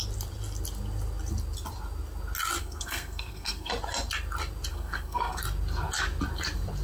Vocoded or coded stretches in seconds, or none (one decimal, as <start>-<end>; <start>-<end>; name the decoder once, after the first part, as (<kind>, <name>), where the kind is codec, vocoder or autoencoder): 2.6-3.7 (codec, SNAC); 4.7-5.4